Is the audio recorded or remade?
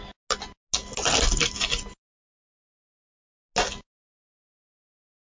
recorded